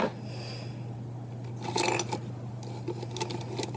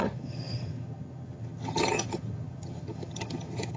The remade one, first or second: second